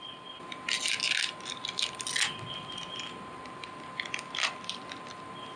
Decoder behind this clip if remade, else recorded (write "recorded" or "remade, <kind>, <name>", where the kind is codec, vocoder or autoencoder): recorded